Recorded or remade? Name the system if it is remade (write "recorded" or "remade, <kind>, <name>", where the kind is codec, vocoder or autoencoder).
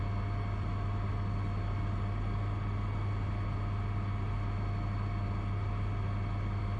recorded